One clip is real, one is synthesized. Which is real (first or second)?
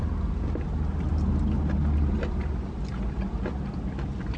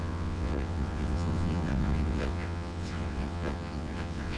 first